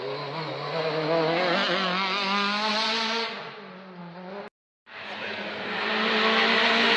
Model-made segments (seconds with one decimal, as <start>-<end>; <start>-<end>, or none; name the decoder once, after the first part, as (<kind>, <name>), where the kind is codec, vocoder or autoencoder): 4.9-5.9 (vocoder, BigVGAN v2)